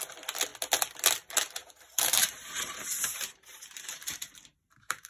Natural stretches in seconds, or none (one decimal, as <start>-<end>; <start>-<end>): 0.0-1.6